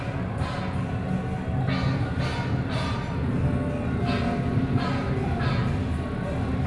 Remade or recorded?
recorded